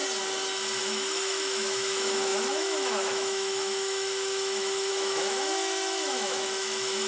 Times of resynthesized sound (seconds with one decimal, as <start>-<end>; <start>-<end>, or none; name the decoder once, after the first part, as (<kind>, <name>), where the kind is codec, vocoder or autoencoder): 0.8-7.1 (autoencoder, DAC-VAE)